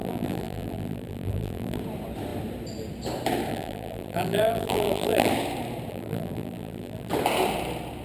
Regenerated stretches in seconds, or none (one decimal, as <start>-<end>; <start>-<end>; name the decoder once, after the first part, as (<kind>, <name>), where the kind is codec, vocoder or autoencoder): 0.0-1.8 (vocoder, BigVGAN v2); 3.5-5.3; 5.9-7.1